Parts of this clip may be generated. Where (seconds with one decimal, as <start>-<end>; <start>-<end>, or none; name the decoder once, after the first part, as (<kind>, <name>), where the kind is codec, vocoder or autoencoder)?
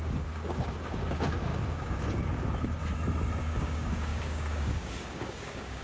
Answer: 0.0-2.8 (codec, DAC); 3.4-5.8